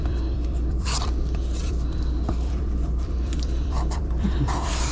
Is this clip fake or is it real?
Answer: fake